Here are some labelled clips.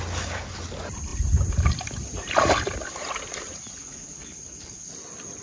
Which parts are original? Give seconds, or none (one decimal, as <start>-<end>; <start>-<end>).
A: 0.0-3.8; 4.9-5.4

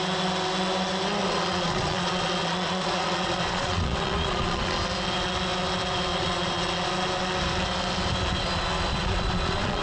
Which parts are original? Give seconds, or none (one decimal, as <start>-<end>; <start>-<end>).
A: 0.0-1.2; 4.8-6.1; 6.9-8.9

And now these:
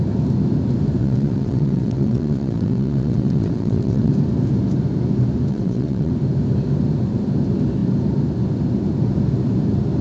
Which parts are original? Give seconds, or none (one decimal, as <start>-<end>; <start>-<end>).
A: 0.0-1.0; 4.1-5.5; 6.1-10.0